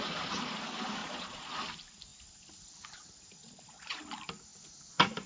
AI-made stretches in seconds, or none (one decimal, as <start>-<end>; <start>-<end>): 1.0-1.6; 3.4-4.0